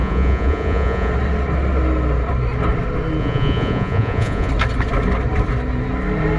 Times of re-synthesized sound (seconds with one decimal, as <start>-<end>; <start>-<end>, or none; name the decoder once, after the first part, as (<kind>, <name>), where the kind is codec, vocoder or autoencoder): 0.0-1.1 (vocoder, Vocos); 3.2-4.5